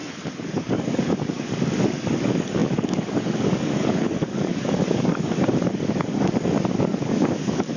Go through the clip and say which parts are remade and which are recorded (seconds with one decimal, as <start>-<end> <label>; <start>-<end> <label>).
0.0-7.8 remade